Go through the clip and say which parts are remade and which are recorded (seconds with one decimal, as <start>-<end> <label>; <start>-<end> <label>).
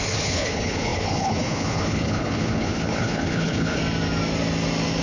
0.0-3.8 remade; 3.8-5.0 recorded